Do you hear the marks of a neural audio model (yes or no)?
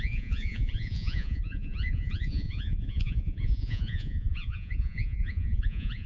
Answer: yes